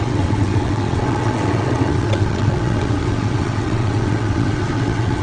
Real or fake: fake